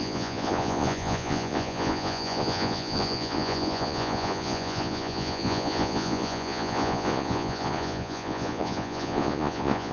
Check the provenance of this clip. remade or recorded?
remade